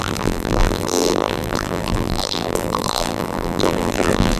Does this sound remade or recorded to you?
remade